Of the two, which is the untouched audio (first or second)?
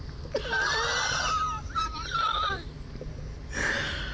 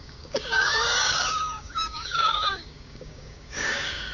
first